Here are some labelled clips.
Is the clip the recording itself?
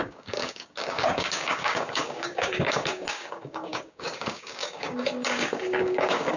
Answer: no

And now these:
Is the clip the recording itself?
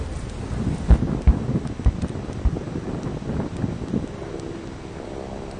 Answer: yes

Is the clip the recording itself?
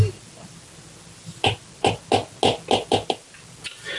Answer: yes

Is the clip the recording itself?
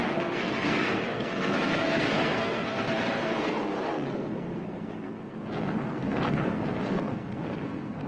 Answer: no